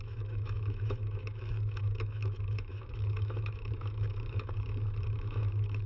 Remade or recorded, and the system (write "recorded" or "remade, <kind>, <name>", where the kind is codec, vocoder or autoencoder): remade, autoencoder, DAC-VAE